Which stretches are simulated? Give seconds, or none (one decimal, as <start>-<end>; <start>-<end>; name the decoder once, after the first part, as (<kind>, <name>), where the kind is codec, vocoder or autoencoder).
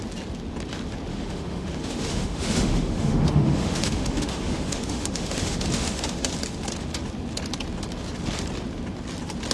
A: 1.1-6.3 (autoencoder, DAC-VAE)